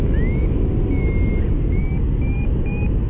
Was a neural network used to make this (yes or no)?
no